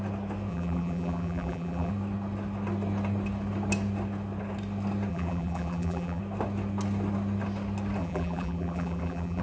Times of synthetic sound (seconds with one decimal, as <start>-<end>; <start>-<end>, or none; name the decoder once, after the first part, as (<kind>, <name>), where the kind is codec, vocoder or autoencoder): 0.5-1.9 (vocoder, BigVGAN v2); 5.1-6.2; 8.0-9.4